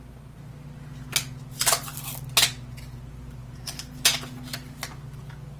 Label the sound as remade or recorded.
recorded